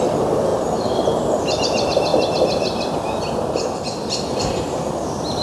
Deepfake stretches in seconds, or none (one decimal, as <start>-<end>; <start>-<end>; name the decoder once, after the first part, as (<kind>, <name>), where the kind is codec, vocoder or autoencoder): 0.0-5.4 (vocoder, BigVGAN v2)